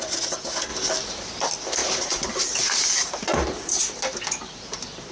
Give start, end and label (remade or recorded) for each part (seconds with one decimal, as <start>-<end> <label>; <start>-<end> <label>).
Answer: 0.0-0.7 recorded; 0.7-1.4 remade; 1.4-1.8 recorded; 1.8-5.1 remade